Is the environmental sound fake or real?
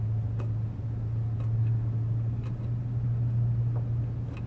real